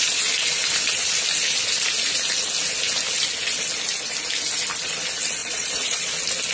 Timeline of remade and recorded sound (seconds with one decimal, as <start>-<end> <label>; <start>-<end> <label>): 0.0-5.4 recorded; 5.4-6.1 remade; 6.1-6.5 recorded